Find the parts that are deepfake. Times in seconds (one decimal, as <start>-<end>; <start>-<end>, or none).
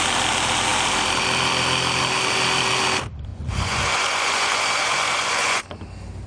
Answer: 3.3-5.6